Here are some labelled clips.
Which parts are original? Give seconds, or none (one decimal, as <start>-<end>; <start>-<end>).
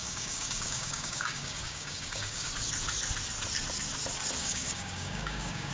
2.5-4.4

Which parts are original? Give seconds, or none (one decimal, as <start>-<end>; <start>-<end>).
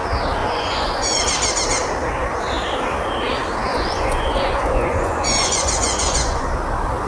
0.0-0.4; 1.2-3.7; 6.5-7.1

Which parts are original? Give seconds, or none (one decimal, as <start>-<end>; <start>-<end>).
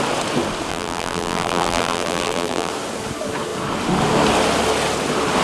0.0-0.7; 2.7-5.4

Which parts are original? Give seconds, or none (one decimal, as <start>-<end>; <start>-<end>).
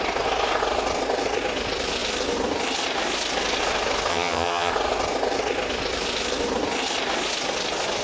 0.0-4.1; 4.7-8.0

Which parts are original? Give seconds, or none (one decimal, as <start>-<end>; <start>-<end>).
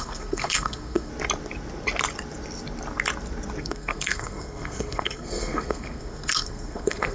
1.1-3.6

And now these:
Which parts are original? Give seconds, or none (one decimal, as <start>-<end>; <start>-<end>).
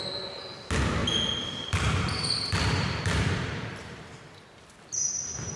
0.0-1.0; 4.4-5.6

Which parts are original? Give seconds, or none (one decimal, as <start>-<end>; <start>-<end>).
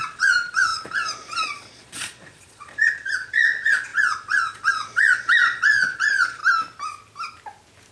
6.4-7.9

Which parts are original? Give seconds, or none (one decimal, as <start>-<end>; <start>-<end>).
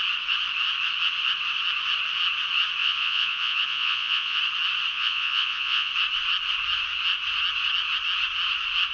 0.0-2.8; 4.4-4.9; 5.9-8.9